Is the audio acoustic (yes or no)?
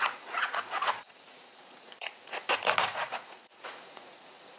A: no